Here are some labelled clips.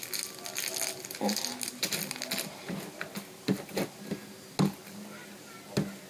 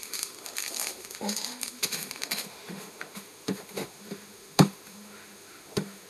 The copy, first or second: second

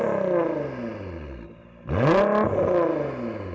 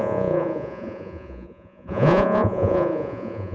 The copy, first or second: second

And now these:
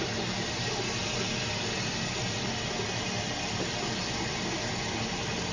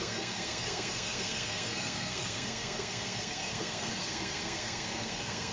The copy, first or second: second